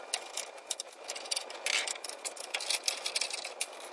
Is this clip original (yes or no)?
yes